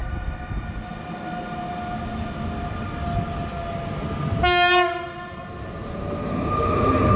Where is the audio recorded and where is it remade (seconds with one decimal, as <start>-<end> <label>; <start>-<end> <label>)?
0.0-7.2 recorded